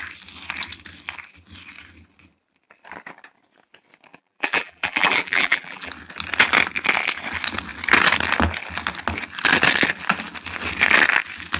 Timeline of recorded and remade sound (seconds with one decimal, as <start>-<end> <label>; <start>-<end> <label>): 0.0-4.1 recorded; 4.1-5.9 remade; 5.9-11.6 recorded